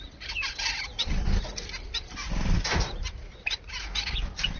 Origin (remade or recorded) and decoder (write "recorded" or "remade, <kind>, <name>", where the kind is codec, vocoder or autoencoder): recorded